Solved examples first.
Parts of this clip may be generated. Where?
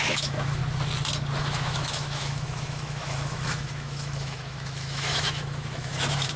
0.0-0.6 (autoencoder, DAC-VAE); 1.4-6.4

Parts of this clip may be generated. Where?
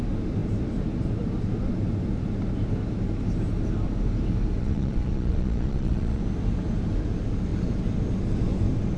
4.6-6.2 (vocoder, Vocos)